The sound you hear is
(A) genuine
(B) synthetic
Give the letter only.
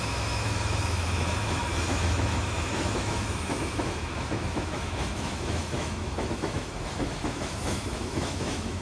B